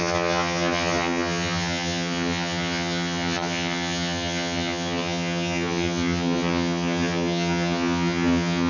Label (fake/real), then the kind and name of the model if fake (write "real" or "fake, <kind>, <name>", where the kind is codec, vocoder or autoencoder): fake, vocoder, HiFi-GAN